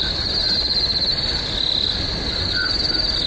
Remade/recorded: recorded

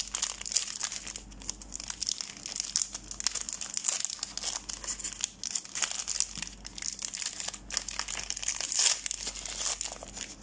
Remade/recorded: recorded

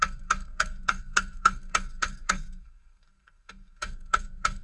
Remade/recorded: remade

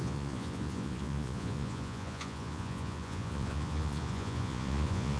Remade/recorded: remade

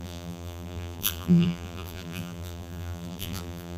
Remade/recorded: remade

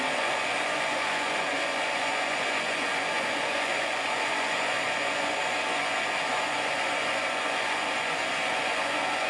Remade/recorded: remade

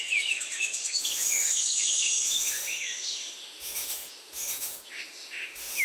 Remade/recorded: remade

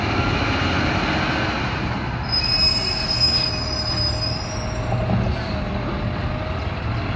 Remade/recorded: recorded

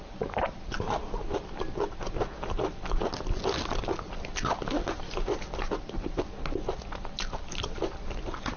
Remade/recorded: recorded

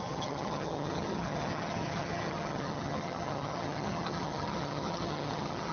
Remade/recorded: remade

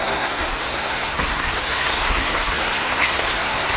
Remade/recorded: remade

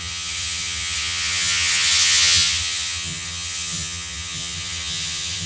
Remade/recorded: remade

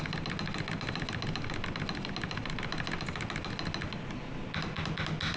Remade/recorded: recorded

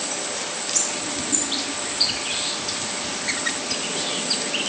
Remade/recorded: recorded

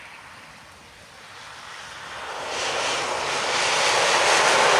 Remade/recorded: recorded